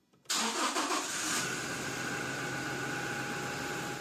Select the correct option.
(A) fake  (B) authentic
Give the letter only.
B